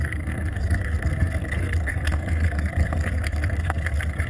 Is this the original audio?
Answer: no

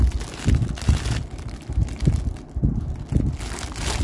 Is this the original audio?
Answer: yes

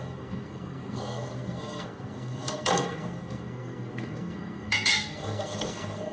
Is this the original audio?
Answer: no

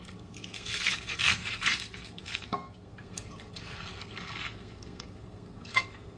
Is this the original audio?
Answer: no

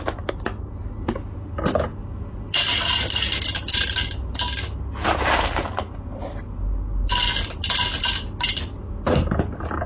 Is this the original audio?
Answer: yes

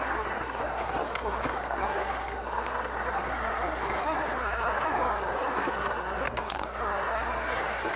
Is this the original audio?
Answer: no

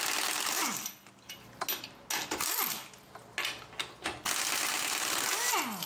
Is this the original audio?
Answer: yes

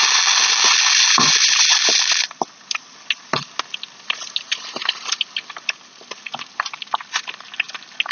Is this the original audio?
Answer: yes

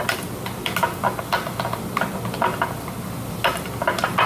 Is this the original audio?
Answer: yes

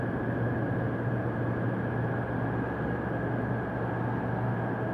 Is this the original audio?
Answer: yes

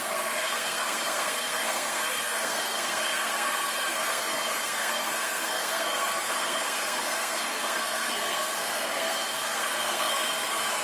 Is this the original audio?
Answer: no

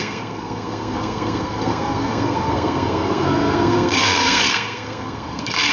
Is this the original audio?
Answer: no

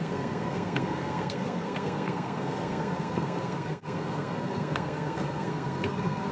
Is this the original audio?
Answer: no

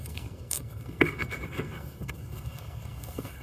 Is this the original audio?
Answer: no